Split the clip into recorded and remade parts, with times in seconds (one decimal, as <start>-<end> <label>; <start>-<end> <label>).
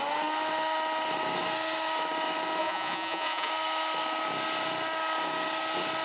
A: 0.0-2.6 recorded; 2.6-3.5 remade; 3.5-6.0 recorded